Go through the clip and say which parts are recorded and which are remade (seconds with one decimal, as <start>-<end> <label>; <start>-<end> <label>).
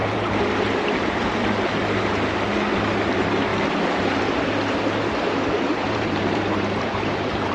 0.0-1.3 remade; 1.3-3.5 recorded; 3.5-7.5 remade